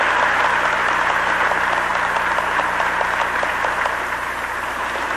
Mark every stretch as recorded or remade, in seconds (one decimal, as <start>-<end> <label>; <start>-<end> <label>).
0.0-0.8 recorded; 0.8-1.3 remade; 1.3-1.9 recorded; 1.9-5.2 remade